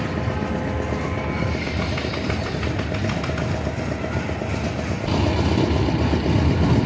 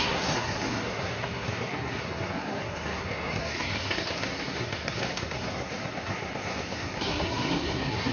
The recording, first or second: first